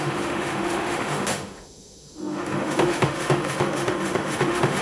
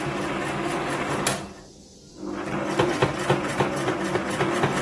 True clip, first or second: second